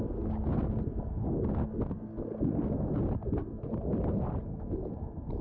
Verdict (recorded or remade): recorded